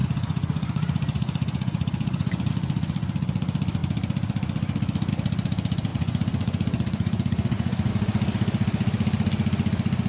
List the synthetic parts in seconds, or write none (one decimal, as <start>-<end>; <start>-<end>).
0.0-2.5; 5.9-7.9